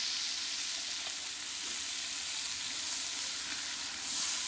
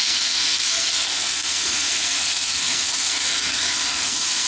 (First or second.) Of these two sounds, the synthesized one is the second